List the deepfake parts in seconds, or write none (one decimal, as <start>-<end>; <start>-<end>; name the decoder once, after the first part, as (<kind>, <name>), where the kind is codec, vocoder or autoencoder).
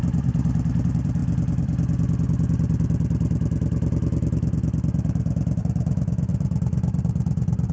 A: 0.0-1.2 (vocoder, BigVGAN v2); 5.6-7.7